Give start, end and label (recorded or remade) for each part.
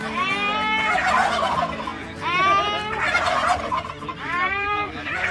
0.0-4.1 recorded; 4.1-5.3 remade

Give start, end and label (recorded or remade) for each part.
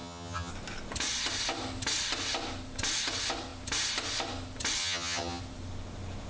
0.0-0.5 remade; 0.5-4.8 recorded; 4.8-5.4 remade; 5.4-6.3 recorded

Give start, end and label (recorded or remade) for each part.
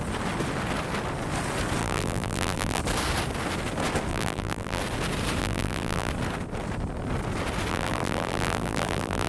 0.0-1.8 recorded; 1.8-2.8 remade; 2.8-4.1 recorded; 4.1-4.8 remade; 4.8-5.4 recorded; 5.4-6.1 remade; 6.1-7.7 recorded; 7.7-9.3 remade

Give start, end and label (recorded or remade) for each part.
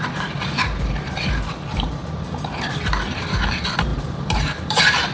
0.0-2.0 remade; 2.0-3.4 recorded; 3.4-5.1 remade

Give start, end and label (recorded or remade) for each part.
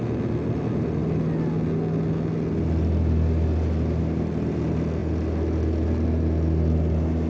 0.0-7.3 recorded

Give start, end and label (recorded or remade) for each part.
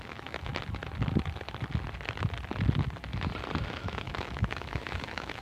0.0-0.5 remade; 0.5-3.7 recorded; 3.7-5.4 remade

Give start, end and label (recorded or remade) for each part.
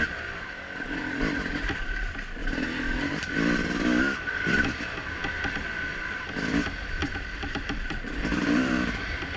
0.0-2.4 recorded; 2.4-3.0 remade; 3.0-7.0 recorded; 7.0-9.0 remade; 9.0-9.4 recorded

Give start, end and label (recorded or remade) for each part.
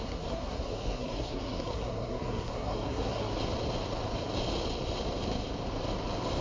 0.0-3.3 remade; 3.3-6.4 recorded